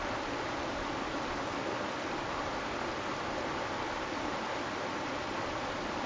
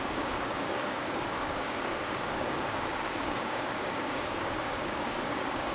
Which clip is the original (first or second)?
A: first